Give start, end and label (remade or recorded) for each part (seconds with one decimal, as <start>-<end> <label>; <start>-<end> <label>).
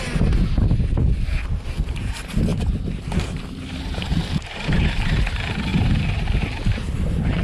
0.0-2.5 recorded; 2.5-5.2 remade; 5.2-5.7 recorded; 5.7-6.2 remade; 6.2-7.4 recorded